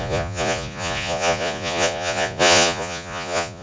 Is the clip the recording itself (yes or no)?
no